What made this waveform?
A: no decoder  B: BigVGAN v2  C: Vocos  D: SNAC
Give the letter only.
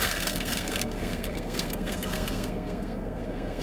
D